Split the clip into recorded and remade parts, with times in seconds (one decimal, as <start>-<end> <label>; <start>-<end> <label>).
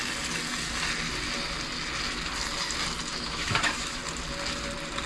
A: 0.0-3.1 recorded; 3.1-4.0 remade; 4.0-5.1 recorded